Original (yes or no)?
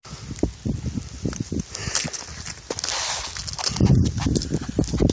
yes